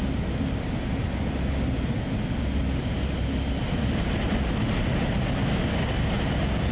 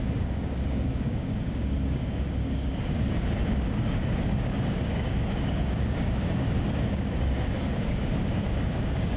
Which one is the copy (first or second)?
second